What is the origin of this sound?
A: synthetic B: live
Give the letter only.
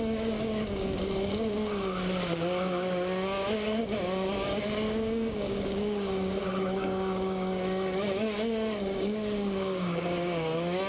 A